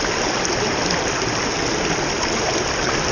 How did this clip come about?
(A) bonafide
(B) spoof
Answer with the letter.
A